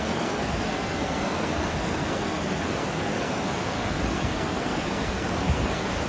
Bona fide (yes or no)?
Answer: no